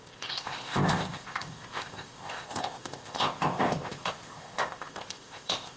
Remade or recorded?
remade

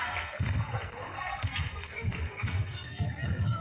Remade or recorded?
remade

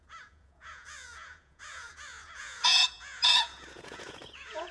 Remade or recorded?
remade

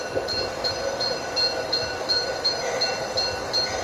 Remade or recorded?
recorded